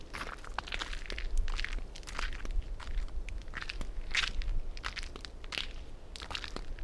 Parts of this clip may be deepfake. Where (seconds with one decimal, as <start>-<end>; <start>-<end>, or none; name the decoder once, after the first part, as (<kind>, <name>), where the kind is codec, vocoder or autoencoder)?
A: none